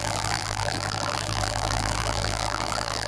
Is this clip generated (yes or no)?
yes